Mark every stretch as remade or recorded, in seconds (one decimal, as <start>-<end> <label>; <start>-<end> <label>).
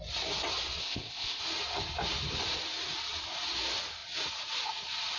0.0-0.8 recorded; 0.8-1.4 remade; 1.4-5.2 recorded